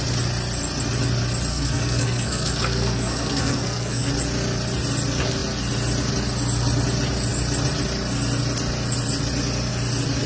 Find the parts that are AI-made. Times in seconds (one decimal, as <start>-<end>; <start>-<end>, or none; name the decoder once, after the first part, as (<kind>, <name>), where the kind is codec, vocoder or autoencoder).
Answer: 1.5-4.1 (codec, SNAC)